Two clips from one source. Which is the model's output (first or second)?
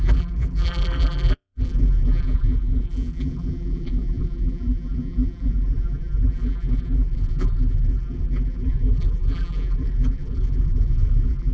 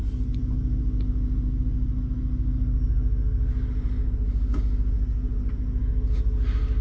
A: first